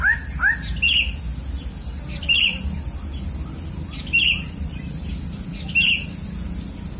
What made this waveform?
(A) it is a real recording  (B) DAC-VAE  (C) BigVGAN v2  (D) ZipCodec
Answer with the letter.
A